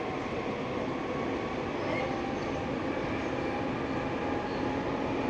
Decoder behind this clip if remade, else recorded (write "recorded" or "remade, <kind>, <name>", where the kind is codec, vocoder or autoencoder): recorded